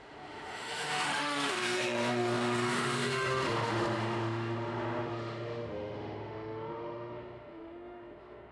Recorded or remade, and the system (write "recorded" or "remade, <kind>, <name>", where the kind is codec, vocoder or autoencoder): remade, autoencoder, DAC-VAE